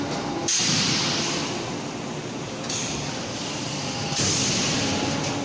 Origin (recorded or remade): recorded